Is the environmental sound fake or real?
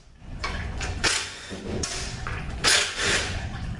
fake